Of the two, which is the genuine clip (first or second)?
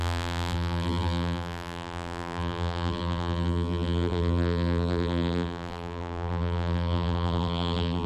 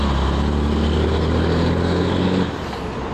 second